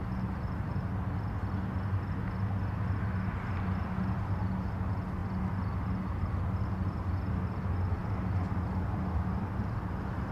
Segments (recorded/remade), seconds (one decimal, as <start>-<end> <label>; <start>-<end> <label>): 0.0-10.3 recorded